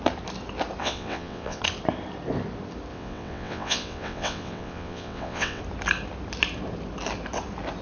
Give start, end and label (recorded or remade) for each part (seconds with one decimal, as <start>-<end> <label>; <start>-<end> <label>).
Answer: 0.0-0.8 recorded; 0.8-1.6 remade; 1.6-2.9 recorded; 2.9-5.6 remade; 5.6-7.8 recorded